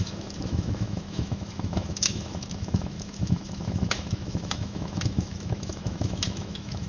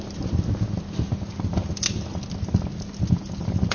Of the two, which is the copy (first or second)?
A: first